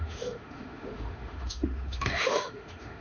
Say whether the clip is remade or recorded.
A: remade